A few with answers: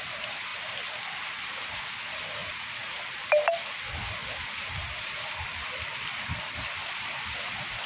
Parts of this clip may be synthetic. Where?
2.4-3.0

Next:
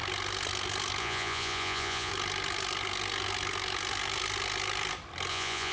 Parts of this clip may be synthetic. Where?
1.0-2.1; 5.3-5.7

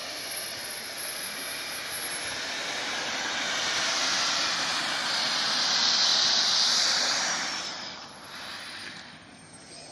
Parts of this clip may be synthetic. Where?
0.0-1.3; 6.1-9.3

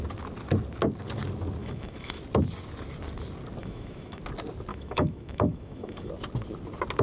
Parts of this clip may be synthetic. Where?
1.6-2.2; 3.6-4.2; 4.7-6.1

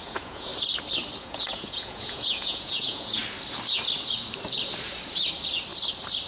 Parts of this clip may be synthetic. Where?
0.0-0.5; 1.2-3.2

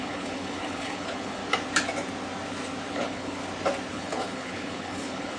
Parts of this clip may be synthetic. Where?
0.0-1.4; 2.9-3.4; 3.9-5.4

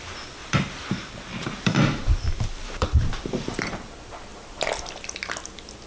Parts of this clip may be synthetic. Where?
0.4-3.9